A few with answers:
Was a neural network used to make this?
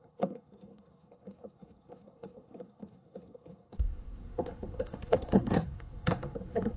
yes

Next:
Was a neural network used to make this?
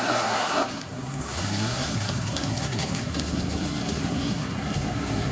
yes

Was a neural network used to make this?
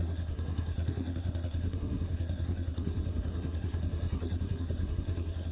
yes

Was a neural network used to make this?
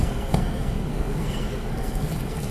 yes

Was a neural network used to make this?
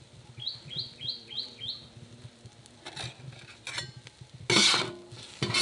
no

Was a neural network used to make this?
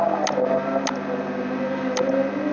no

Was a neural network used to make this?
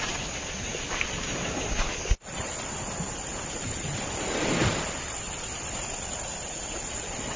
no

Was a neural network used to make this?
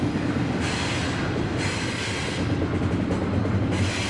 no